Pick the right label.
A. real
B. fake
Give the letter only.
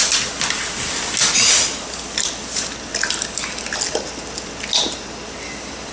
A